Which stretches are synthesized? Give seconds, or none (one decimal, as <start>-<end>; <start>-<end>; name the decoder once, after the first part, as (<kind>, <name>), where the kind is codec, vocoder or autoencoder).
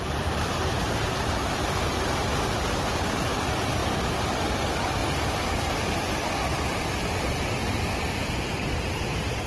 5.0-7.1 (vocoder, BigVGAN v2)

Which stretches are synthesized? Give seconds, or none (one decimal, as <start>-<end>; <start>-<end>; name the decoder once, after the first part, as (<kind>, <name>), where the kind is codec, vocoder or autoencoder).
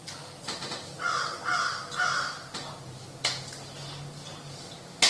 none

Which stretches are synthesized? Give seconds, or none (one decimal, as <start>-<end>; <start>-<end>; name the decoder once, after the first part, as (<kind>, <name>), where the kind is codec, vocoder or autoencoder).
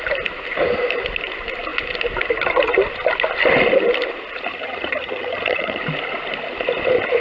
4.5-5.8 (vocoder, HiFi-GAN)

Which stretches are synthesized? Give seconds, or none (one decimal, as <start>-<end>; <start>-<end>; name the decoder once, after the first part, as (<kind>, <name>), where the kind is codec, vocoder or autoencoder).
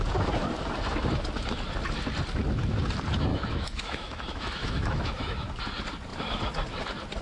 3.3-5.6 (autoencoder, DAC-VAE)